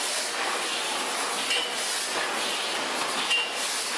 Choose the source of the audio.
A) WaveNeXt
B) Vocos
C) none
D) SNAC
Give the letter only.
C